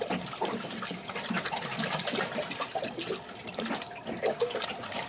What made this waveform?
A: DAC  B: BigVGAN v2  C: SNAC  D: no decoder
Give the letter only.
D